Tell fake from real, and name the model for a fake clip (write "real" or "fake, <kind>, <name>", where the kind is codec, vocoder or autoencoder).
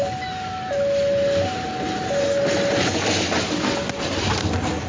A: real